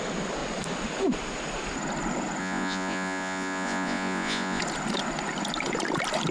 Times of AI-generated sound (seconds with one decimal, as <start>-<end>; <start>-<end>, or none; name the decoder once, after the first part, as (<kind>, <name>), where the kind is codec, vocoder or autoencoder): 2.4-4.6 (vocoder, Vocos)